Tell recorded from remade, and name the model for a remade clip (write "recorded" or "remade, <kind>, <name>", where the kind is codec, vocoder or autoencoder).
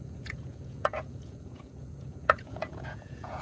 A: remade, vocoder, Vocos